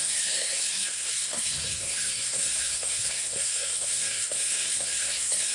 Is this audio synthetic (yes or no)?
yes